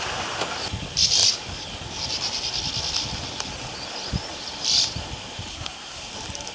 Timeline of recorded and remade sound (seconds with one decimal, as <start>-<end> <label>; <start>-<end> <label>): 0.0-5.5 recorded; 5.5-6.1 remade; 6.1-6.5 recorded